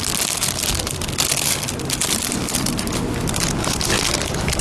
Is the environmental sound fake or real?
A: real